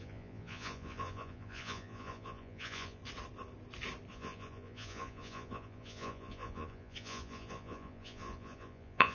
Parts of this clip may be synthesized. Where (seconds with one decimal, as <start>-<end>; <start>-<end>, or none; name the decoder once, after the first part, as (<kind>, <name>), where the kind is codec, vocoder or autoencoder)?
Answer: 0.0-3.0 (vocoder, Vocos); 4.1-9.1

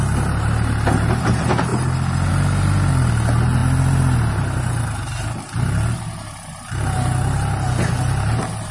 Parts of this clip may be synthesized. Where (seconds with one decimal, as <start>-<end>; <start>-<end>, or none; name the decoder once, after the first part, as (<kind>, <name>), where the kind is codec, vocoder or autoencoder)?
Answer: none

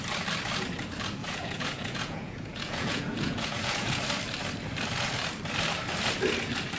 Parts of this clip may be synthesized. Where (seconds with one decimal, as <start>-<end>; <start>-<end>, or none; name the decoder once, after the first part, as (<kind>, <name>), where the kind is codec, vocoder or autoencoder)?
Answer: 1.2-4.0 (vocoder, Vocos)

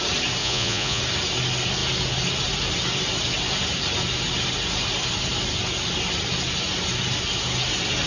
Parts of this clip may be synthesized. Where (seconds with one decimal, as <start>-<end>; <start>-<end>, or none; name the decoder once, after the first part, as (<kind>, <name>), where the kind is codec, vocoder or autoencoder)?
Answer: 0.4-1.0 (vocoder, Vocos)

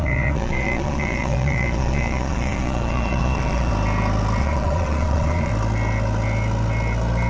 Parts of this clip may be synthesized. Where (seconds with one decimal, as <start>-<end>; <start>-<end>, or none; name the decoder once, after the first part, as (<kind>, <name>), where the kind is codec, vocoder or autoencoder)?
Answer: 0.0-3.7 (vocoder, Vocos); 4.4-5.5